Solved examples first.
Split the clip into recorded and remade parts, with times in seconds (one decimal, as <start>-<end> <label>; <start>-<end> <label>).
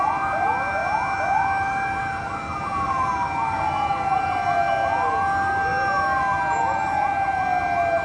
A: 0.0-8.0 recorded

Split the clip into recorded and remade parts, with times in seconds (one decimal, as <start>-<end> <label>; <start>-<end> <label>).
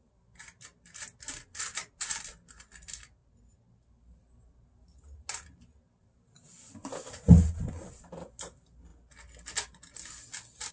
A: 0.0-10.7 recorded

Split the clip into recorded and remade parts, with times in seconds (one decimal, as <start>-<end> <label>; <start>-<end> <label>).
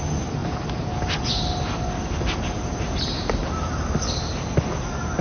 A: 0.0-5.2 recorded